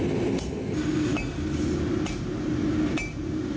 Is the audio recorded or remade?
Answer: recorded